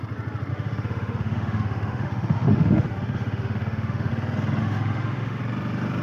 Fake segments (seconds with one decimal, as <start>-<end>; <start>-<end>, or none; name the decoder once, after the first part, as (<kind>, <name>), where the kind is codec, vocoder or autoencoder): 0.5-4.1 (autoencoder, DAC-VAE); 4.6-5.4

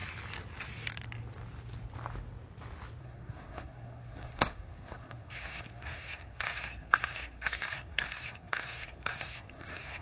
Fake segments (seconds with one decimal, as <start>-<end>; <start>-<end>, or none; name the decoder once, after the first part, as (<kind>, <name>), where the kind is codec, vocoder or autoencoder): 3.0-10.0 (codec, SNAC)

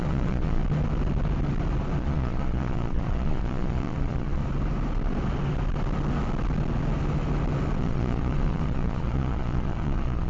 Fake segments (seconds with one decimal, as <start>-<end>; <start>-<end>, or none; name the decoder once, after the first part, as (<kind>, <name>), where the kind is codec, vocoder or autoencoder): 0.0-0.6 (vocoder, Vocos); 2.0-4.4; 7.8-10.3

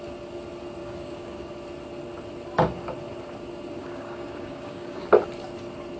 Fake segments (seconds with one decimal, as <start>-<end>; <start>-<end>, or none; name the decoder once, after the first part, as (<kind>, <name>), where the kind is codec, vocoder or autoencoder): 0.8-1.5 (codec, DAC); 3.8-5.1

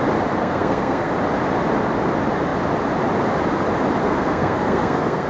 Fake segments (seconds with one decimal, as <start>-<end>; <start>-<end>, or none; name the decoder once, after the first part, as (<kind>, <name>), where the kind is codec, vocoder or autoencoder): 0.4-1.1 (codec, SNAC); 4.0-5.3

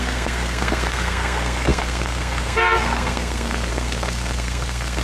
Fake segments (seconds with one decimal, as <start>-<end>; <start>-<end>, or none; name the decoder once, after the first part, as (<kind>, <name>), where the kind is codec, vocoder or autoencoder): 0.0-5.0 (codec, SNAC)

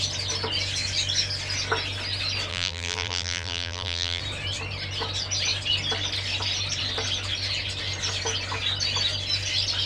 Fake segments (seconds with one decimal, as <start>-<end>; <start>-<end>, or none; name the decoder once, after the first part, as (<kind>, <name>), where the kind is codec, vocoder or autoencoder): 2.5-4.2 (vocoder, BigVGAN v2)

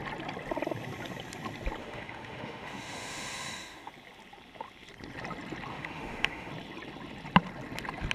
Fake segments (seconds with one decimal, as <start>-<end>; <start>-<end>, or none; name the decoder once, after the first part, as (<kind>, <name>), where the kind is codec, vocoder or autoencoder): 1.8-3.9 (autoencoder, DAC-VAE); 5.7-6.5